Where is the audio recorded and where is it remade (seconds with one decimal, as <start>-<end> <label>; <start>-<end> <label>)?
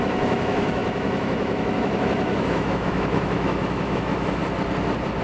0.0-4.4 remade; 4.4-5.2 recorded